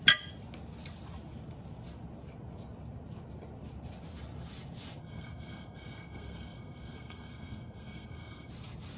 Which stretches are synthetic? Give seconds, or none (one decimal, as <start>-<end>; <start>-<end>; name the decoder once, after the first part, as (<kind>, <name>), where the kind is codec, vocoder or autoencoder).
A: 5.0-8.5 (codec, SNAC)